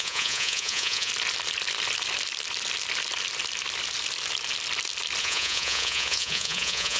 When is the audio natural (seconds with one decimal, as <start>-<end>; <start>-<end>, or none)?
1.1-5.2